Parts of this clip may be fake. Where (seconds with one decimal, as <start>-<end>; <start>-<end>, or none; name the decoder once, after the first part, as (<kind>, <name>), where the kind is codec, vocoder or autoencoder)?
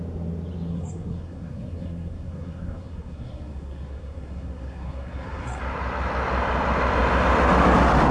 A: 0.7-5.6 (codec, SNAC)